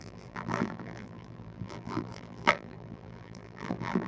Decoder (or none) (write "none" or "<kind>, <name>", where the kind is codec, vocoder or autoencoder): vocoder, BigVGAN v2